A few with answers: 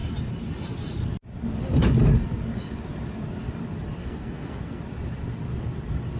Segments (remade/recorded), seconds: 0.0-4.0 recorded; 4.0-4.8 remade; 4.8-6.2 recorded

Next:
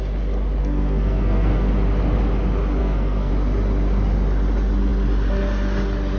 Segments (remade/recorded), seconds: 0.0-0.6 recorded; 0.6-1.7 remade; 1.7-2.8 recorded; 2.8-3.3 remade; 3.3-6.2 recorded